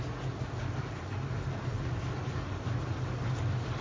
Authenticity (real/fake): real